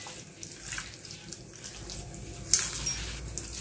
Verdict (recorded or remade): recorded